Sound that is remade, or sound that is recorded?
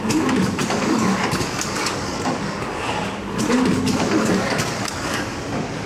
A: remade